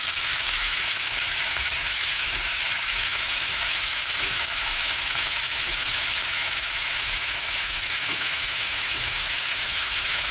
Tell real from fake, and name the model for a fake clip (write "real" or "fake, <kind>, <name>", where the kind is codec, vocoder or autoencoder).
fake, autoencoder, DAC-VAE